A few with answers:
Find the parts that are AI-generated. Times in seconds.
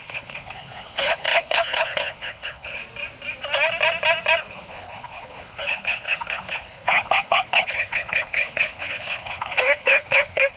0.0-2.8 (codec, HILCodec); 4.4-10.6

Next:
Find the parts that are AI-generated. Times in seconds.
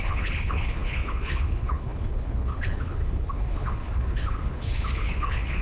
0.0-5.6 (codec, HILCodec)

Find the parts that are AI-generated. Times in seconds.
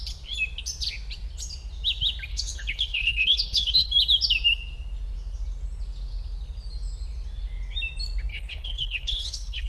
2.3-3.9 (codec, HILCodec); 8.3-9.7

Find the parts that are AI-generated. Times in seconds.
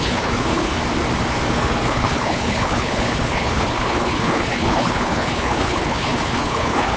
0.0-0.8 (codec, HILCodec); 1.5-7.0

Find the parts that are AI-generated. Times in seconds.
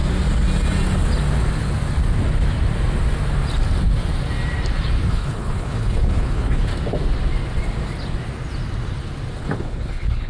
5.1-6.7 (codec, HILCodec); 9.4-10.3